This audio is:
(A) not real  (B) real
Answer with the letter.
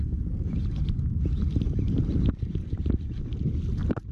B